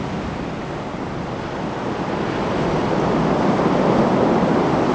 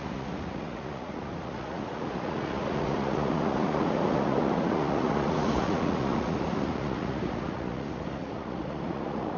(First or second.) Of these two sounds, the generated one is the second